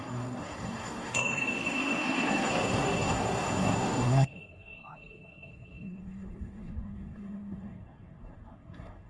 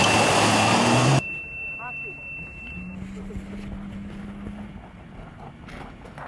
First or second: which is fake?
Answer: first